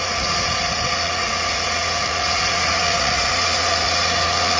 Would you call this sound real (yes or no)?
no